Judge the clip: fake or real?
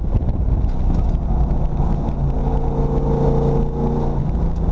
real